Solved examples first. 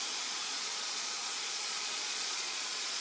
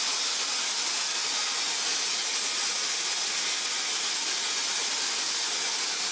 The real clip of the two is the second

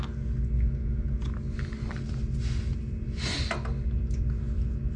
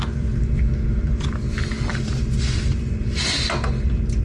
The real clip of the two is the first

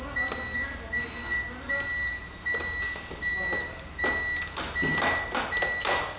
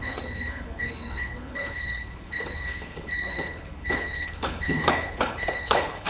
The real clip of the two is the first